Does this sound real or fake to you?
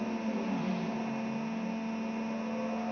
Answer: real